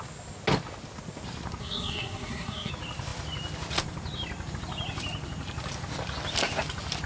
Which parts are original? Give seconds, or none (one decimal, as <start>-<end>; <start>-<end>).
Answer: 0.0-1.6; 2.7-7.1

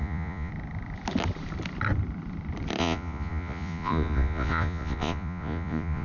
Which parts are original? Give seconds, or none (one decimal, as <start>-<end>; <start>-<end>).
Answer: 0.5-2.8